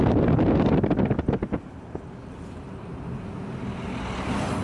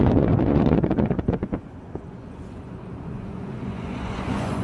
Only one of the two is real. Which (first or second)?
first